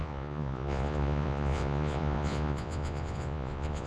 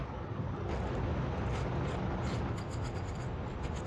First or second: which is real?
second